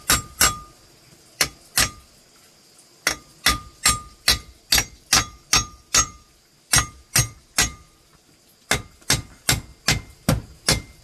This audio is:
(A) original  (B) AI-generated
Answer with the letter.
A